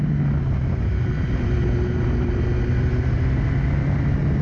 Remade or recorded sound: recorded